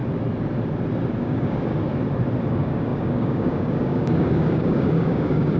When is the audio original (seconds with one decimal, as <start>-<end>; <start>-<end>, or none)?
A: 0.0-1.1; 1.7-2.5